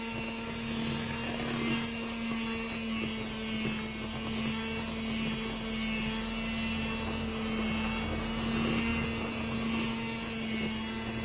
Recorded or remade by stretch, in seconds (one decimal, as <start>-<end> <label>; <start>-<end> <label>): 0.0-11.2 recorded